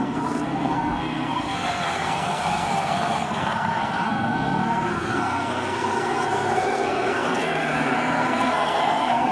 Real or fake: fake